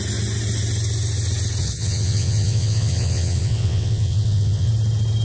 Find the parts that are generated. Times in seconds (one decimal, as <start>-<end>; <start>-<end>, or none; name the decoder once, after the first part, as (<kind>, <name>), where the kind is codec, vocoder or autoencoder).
1.6-4.7 (vocoder, WaveNeXt)